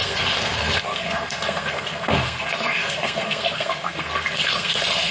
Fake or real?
fake